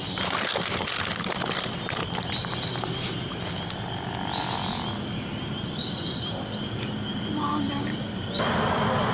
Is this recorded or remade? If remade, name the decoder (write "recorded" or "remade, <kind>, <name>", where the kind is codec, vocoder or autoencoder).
recorded